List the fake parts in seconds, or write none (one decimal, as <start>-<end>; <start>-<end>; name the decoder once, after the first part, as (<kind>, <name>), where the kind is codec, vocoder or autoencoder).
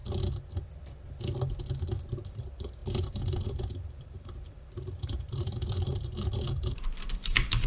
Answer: 2.3-7.7 (vocoder, BigVGAN v2)